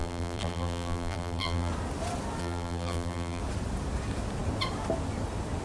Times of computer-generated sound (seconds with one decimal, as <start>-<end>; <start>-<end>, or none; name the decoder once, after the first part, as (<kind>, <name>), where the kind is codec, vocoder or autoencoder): 0.0-1.7 (vocoder, BigVGAN v2); 2.4-3.4